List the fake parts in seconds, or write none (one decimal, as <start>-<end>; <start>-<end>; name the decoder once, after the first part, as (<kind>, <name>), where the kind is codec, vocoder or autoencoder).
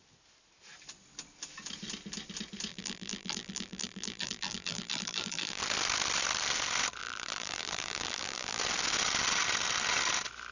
2.7-5.6 (vocoder, BigVGAN v2); 7.0-8.6